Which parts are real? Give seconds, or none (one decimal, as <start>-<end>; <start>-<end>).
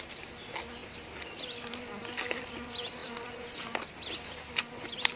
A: 0.0-5.2